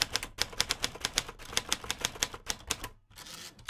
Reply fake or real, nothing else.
real